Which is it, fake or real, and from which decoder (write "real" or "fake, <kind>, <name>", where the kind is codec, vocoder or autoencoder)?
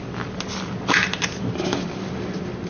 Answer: real